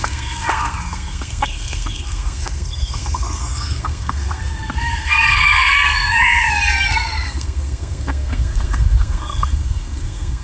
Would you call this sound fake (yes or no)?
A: yes